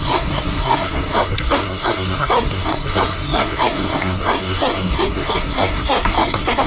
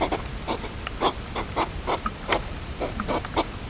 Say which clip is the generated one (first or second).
first